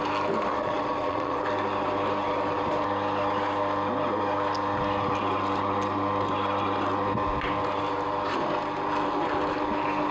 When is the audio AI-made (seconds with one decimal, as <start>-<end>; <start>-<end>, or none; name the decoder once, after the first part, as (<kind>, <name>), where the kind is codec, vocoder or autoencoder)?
0.5-1.4 (vocoder, Vocos)